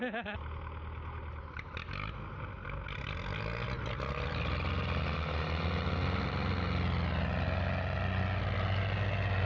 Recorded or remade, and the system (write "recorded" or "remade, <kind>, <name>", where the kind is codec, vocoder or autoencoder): recorded